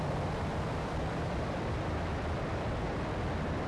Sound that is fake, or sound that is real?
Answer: fake